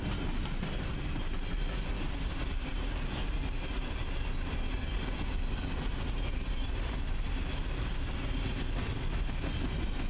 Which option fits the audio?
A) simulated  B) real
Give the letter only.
B